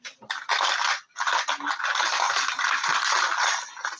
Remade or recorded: recorded